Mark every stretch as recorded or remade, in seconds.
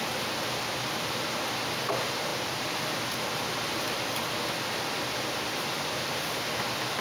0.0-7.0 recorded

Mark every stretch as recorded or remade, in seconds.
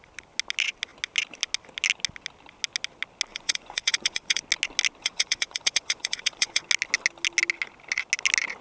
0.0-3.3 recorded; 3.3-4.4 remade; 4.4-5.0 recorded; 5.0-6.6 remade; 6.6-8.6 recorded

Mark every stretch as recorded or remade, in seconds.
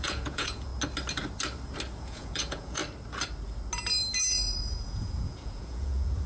0.0-0.7 remade; 0.7-2.0 recorded; 2.0-2.8 remade; 2.8-4.3 recorded; 4.3-6.3 remade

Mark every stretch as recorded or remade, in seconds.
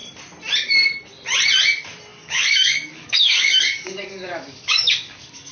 0.0-2.1 recorded; 2.1-5.5 remade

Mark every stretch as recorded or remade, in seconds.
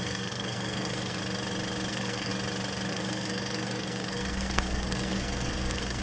0.0-1.2 remade; 1.2-1.9 recorded; 1.9-2.3 remade; 2.3-2.9 recorded; 2.9-6.0 remade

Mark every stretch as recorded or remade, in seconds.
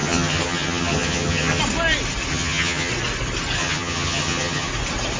0.0-1.6 remade; 1.6-2.3 recorded; 2.3-2.9 remade; 2.9-3.6 recorded; 3.6-4.7 remade; 4.7-5.2 recorded